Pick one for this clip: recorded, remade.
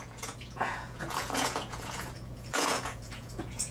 remade